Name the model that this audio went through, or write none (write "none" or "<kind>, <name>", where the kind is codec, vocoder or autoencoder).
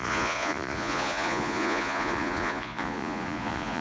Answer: vocoder, Vocos